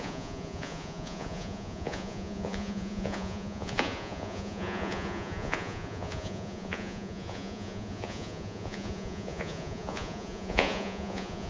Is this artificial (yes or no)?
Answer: yes